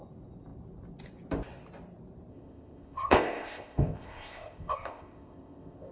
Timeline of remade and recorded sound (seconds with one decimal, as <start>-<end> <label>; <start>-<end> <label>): 0.0-2.3 recorded; 2.3-5.9 remade